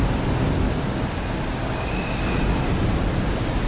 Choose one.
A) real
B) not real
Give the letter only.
A